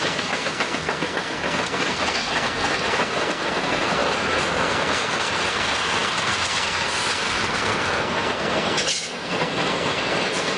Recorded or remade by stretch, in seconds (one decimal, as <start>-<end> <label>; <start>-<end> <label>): 0.0-10.6 remade